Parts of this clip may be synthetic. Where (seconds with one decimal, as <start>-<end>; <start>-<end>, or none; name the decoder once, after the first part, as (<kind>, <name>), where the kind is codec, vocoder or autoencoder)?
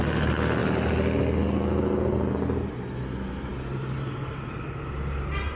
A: none